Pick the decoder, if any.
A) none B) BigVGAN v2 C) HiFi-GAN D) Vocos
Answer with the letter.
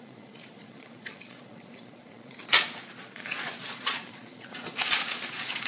D